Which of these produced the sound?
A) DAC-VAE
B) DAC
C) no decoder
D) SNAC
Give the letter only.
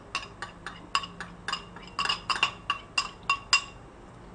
C